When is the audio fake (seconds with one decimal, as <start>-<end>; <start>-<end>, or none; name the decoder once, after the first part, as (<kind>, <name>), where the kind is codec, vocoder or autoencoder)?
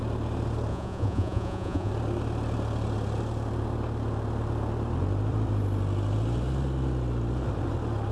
0.7-1.9 (vocoder, Vocos)